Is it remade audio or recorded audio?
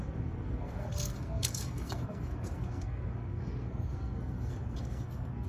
remade